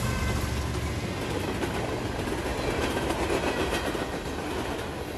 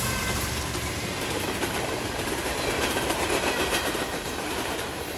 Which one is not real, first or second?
second